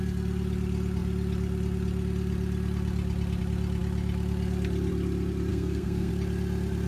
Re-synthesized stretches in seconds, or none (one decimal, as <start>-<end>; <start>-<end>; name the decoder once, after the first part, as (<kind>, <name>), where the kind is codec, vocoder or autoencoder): 5.5-6.1 (codec, SNAC)